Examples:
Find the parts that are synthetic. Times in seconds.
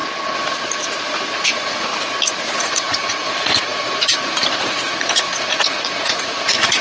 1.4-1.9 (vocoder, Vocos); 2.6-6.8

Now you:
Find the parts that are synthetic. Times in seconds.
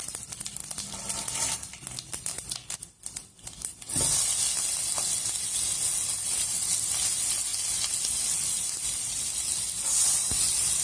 none